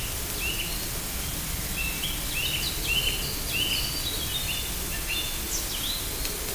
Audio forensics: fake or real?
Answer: real